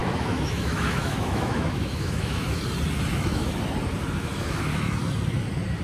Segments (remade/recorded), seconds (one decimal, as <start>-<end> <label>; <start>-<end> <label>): 0.0-2.6 remade; 2.6-3.1 recorded; 3.1-3.6 remade; 3.6-4.2 recorded; 4.2-5.0 remade; 5.0-5.8 recorded